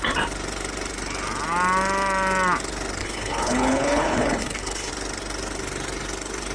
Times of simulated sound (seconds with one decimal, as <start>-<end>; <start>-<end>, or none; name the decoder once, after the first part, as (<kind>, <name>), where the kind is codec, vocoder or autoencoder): 3.0-4.9 (codec, HILCodec)

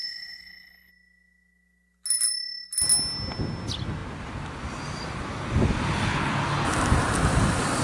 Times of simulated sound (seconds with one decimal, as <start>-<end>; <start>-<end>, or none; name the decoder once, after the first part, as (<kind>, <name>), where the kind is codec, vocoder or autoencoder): 0.0-0.9 (codec, HILCodec)

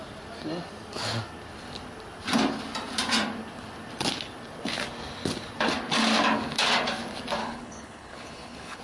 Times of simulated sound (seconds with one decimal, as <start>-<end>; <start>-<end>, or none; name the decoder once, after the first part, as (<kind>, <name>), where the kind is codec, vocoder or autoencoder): 7.4-8.8 (codec, HILCodec)

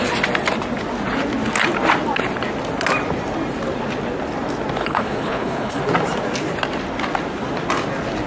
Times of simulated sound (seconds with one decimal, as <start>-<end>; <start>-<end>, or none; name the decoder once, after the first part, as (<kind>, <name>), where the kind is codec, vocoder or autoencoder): 4.8-5.8 (codec, HILCodec)

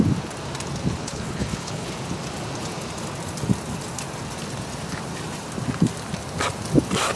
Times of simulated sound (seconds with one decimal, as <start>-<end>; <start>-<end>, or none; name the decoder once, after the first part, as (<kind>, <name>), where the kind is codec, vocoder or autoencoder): 1.0-1.9 (codec, HILCodec)

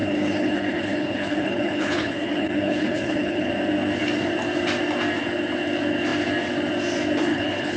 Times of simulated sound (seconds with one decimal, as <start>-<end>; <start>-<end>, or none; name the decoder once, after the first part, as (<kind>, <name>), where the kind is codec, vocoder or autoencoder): 0.0-3.5 (codec, HILCodec); 7.3-7.8

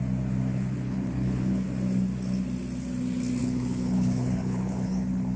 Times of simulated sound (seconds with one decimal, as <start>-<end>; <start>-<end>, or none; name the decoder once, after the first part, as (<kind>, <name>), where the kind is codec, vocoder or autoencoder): 0.5-1.7 (codec, HILCodec); 3.4-5.4